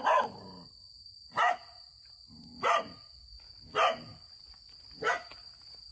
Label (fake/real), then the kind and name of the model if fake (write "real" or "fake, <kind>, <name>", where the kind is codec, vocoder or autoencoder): real